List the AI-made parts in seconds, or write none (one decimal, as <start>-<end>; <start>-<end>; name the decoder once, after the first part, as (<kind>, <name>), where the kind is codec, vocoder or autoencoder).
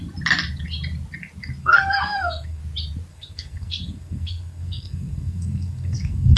1.6-2.6 (codec, SNAC); 3.1-6.4